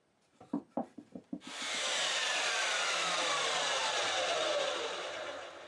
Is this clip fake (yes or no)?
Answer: yes